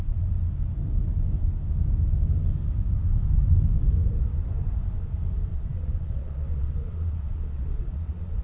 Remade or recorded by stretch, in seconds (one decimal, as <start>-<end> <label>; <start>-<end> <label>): 0.0-5.5 recorded; 5.5-8.4 remade